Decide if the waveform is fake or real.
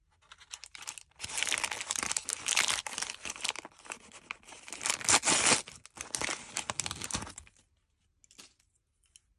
real